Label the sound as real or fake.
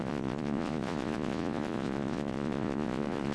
fake